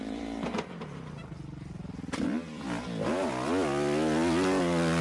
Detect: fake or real real